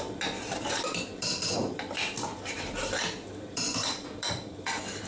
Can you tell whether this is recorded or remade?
remade